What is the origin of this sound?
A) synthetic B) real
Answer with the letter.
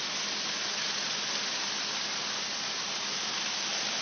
B